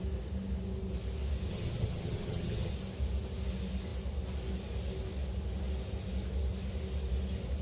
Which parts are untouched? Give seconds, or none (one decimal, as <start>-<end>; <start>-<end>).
0.0-1.5; 2.7-7.6